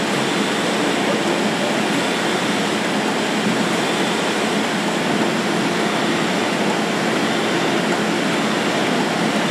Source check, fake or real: real